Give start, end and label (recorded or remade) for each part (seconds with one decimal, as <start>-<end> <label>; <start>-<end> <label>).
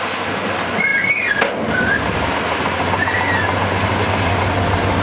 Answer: 0.0-5.0 recorded